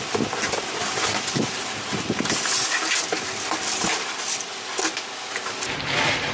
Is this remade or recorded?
recorded